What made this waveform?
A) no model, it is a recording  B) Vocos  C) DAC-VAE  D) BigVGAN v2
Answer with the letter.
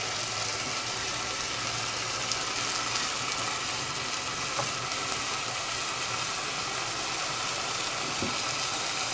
A